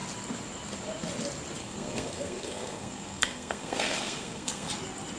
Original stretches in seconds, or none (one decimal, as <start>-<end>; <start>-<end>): 0.0-1.6; 4.7-5.2